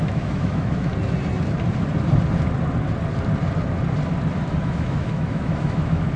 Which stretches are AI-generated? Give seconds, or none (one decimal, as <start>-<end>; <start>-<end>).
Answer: 0.0-0.9; 4.6-6.2